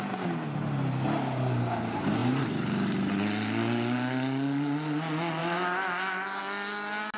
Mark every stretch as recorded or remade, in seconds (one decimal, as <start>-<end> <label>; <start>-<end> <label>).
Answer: 0.0-2.2 recorded; 2.2-3.1 remade; 3.1-5.4 recorded; 5.4-6.4 remade; 6.4-7.2 recorded